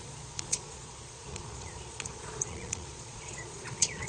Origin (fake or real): fake